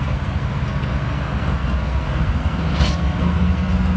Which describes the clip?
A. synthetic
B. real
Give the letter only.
A